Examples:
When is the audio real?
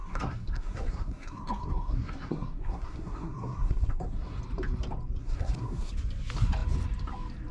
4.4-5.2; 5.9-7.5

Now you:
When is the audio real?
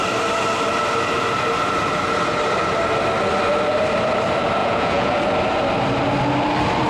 0.0-4.6; 5.2-6.9